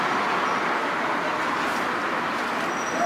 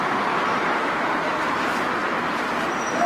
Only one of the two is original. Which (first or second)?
first